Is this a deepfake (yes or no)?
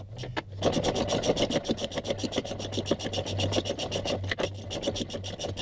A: no